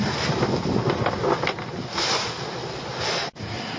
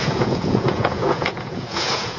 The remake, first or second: second